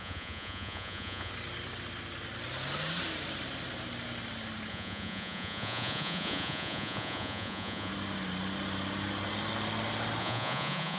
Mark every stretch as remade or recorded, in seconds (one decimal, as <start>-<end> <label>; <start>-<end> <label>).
0.0-1.3 remade; 1.3-4.7 recorded; 4.7-7.9 remade; 7.9-10.2 recorded; 10.2-11.0 remade